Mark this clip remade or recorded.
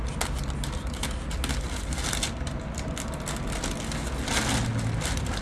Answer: recorded